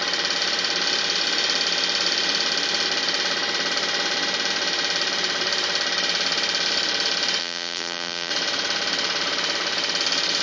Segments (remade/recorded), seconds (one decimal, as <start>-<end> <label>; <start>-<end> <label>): 0.0-7.4 recorded; 7.4-8.3 remade; 8.3-10.4 recorded